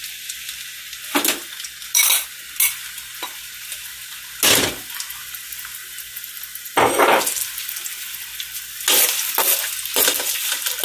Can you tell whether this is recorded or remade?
recorded